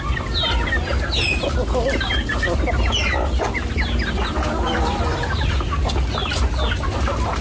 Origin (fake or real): real